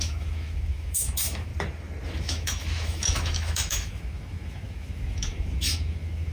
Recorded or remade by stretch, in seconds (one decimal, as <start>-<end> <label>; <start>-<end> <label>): 0.0-1.5 remade; 1.5-2.2 recorded; 2.2-6.3 remade